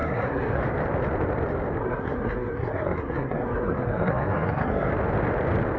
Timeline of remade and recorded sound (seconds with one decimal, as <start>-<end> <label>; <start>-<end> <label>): 0.0-0.6 remade; 0.6-1.8 recorded; 1.8-4.9 remade; 4.9-5.8 recorded

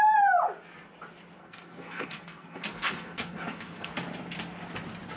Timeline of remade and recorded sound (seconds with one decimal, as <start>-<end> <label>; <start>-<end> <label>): 0.0-1.4 recorded; 1.4-3.9 remade; 3.9-5.2 recorded

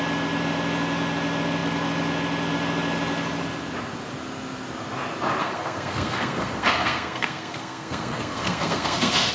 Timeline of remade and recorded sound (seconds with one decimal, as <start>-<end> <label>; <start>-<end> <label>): 0.0-5.4 recorded; 5.4-9.3 remade

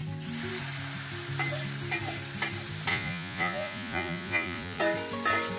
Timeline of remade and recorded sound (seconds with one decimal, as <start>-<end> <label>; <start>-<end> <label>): 0.0-2.9 recorded; 2.9-4.8 remade; 4.8-5.6 recorded

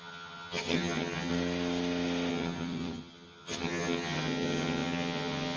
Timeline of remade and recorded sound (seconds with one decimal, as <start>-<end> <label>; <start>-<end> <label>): 0.0-1.3 remade; 1.3-2.3 recorded; 2.3-5.6 remade

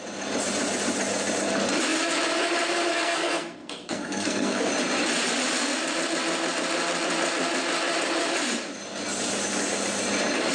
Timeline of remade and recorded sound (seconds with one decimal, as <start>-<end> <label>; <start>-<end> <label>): 0.0-2.9 recorded; 2.9-4.7 remade; 4.7-10.5 recorded

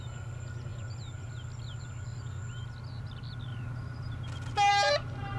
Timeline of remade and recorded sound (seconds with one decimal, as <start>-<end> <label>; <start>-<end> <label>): 0.0-5.4 recorded